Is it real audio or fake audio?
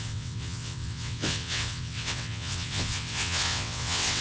fake